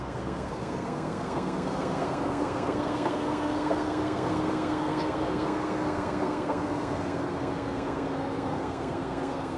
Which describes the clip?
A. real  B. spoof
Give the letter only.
B